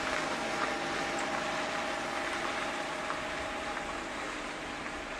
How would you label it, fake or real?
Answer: real